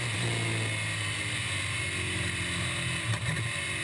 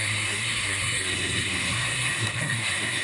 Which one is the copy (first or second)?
second